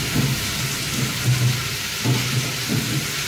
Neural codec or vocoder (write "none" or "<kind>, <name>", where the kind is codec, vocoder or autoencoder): none